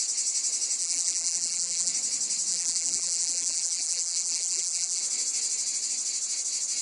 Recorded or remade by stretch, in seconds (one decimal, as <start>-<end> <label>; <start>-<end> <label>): 0.0-0.8 recorded; 0.8-1.9 remade; 1.9-2.5 recorded; 2.5-5.0 remade; 5.0-6.8 recorded